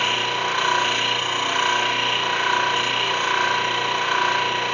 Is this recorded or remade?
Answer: recorded